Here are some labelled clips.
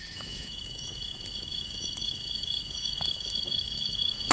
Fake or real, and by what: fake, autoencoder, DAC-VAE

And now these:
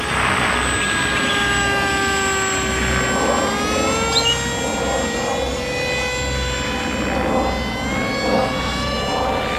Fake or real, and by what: real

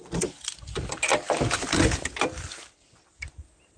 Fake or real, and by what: real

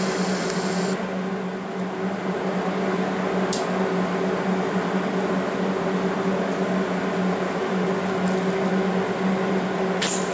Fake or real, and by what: real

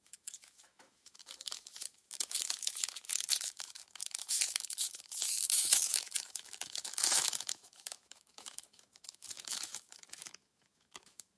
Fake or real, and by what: fake, autoencoder, DAC-VAE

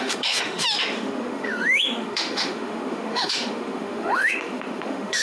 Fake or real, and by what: fake, autoencoder, DAC-VAE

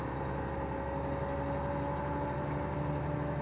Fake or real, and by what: real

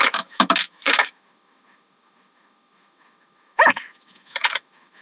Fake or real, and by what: fake, autoencoder, DAC-VAE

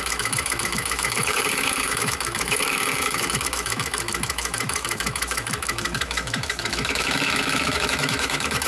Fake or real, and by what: fake, autoencoder, DAC-VAE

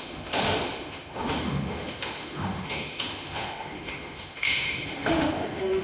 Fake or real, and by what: fake, autoencoder, DAC-VAE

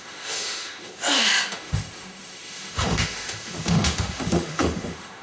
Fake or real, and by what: fake, autoencoder, DAC-VAE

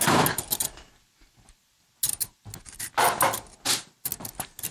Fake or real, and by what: real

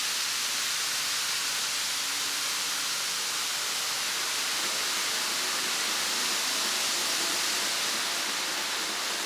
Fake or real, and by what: real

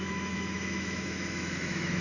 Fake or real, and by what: fake, autoencoder, DAC-VAE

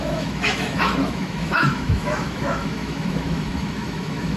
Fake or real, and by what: fake, autoencoder, DAC-VAE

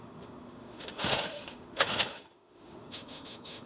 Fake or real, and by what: fake, autoencoder, DAC-VAE